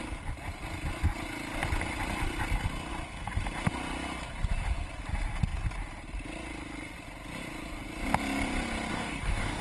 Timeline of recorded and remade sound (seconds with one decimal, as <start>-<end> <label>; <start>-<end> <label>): 0.0-8.9 recorded; 8.9-9.6 remade